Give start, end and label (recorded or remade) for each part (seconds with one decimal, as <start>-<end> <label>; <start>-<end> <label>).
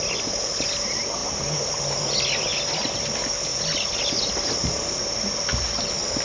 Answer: 0.0-6.2 recorded